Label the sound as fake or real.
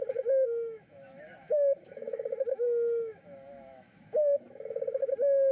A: fake